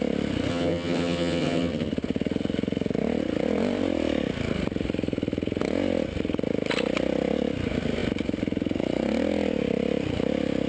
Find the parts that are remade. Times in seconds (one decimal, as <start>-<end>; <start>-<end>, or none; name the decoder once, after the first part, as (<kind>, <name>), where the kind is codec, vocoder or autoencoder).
0.5-1.9 (vocoder, HiFi-GAN)